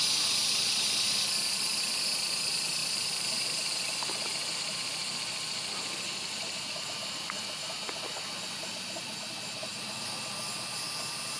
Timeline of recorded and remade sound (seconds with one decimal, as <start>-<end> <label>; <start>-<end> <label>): 0.0-2.8 recorded; 2.8-3.7 remade; 3.7-11.4 recorded